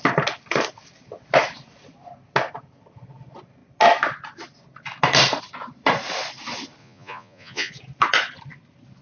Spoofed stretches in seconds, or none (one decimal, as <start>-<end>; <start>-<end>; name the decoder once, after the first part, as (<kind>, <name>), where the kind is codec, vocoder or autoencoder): 6.8-7.7 (vocoder, Vocos)